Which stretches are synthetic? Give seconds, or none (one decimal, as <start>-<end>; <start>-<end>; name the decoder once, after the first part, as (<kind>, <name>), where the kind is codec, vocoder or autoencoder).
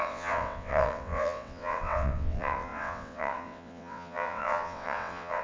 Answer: 0.0-5.4 (vocoder, WaveNeXt)